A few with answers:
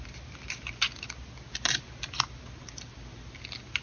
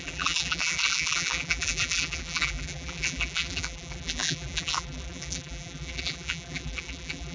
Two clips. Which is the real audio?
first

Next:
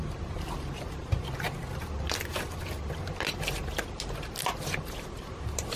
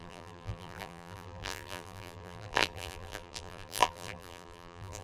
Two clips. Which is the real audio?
first